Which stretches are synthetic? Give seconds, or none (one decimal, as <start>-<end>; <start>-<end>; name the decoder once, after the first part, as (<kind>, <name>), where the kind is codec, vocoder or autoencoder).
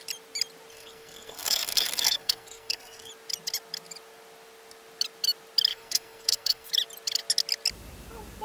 0.7-3.1 (codec, SNAC); 5.7-6.7